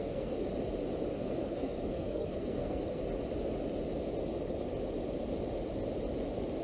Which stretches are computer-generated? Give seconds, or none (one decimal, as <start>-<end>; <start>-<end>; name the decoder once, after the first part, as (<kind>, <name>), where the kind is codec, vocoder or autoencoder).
0.0-0.5 (codec, SNAC); 1.2-3.0